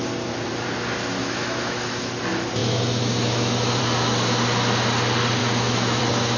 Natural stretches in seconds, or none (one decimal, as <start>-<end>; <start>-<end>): 0.0-1.2; 2.1-2.6; 3.8-5.4; 6.0-6.4